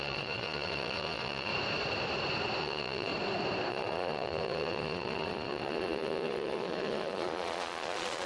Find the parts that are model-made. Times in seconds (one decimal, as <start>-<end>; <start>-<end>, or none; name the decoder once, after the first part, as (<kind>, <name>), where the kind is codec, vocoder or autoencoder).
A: 0.0-1.5 (vocoder, Vocos); 2.6-3.1; 3.7-8.3